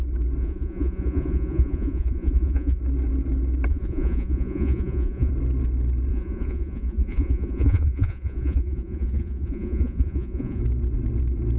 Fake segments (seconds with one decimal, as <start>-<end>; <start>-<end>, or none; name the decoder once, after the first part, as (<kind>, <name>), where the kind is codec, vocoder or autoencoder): 0.4-2.8 (vocoder, Vocos); 3.7-5.3; 6.1-10.6